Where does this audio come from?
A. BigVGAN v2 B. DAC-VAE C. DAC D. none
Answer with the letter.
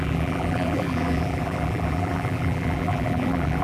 A